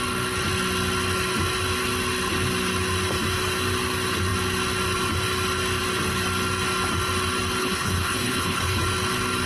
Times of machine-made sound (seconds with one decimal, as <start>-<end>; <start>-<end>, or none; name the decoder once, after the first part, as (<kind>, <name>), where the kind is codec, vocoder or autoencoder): 7.6-8.8 (codec, HILCodec)